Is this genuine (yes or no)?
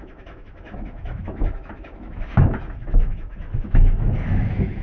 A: no